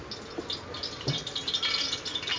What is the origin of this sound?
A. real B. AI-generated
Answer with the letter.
A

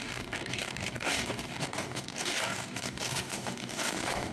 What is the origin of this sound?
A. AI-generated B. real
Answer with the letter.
A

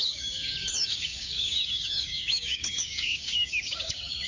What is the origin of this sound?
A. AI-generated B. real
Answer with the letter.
A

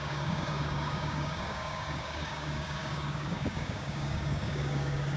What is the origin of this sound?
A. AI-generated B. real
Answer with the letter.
A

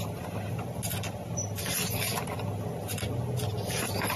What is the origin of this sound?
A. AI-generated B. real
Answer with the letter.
B